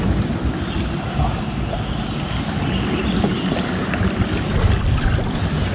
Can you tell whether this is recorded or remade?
recorded